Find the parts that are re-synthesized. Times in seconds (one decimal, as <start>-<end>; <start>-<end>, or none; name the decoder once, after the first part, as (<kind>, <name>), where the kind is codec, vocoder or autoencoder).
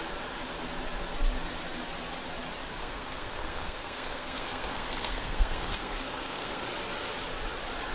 2.8-6.7 (codec, SNAC)